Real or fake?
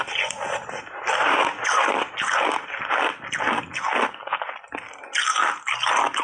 real